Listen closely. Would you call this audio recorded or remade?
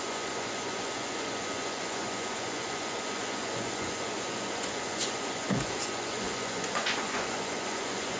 remade